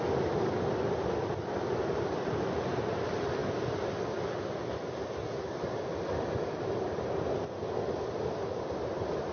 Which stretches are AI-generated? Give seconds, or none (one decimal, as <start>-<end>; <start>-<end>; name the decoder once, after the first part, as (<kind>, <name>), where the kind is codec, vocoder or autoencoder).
none